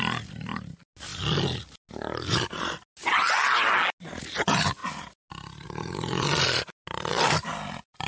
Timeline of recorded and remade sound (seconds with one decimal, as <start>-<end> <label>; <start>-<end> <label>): 0.0-8.1 recorded